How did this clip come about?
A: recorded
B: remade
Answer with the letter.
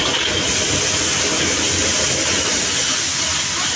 A